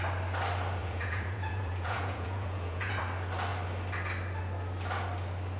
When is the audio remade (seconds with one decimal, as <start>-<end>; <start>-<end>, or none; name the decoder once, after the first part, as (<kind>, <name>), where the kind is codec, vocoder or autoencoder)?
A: 0.8-3.0 (vocoder, Vocos)